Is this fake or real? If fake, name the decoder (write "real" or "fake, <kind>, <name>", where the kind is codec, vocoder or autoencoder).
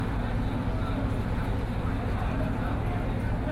real